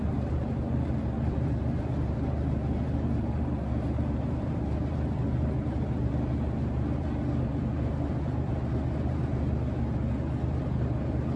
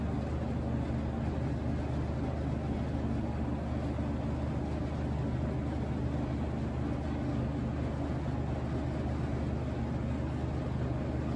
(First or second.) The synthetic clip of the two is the first